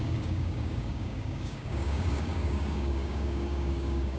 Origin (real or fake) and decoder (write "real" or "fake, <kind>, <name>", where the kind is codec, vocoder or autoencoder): fake, codec, DAC